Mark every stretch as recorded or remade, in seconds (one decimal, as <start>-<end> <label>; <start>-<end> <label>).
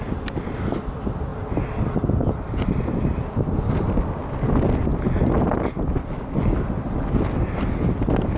0.0-8.4 recorded